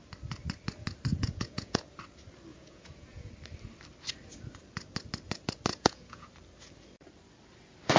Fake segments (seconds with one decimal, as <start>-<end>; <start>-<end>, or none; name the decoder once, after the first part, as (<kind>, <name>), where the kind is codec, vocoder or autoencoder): 1.1-1.9 (vocoder, Vocos); 2.5-3.3; 5.7-6.3